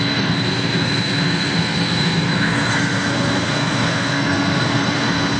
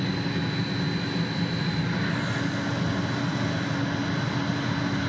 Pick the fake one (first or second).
first